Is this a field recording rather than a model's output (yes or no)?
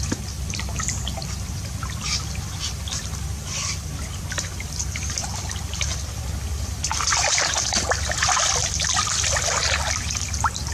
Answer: yes